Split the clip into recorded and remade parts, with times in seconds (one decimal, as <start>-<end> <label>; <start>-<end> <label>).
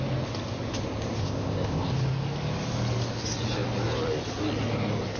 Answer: 0.0-1.2 recorded; 1.2-1.9 remade; 1.9-5.2 recorded